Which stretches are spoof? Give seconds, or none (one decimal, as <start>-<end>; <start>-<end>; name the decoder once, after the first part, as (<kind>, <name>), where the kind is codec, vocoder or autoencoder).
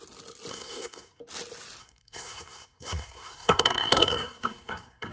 0.5-1.2 (codec, SNAC); 1.8-5.1